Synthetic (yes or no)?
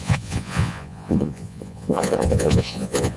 yes